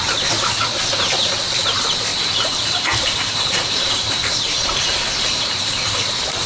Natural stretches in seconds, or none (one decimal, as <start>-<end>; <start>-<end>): 0.0-2.1; 6.0-6.5

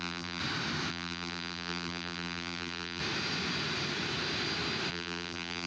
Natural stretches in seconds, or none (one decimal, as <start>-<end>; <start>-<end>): 0.4-0.9; 3.0-4.9